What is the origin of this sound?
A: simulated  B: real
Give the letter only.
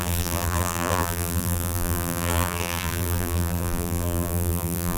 A